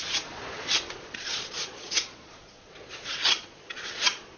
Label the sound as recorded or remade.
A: remade